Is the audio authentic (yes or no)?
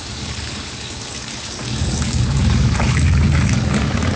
no